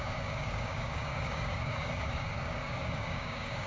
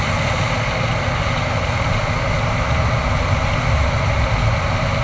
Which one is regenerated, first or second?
first